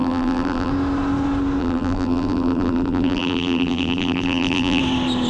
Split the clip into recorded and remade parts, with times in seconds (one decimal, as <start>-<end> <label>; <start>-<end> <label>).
0.0-0.7 remade; 0.7-1.6 recorded; 1.6-4.8 remade; 4.8-5.3 recorded